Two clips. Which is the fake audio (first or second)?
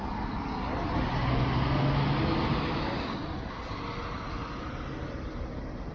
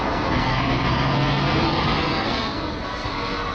second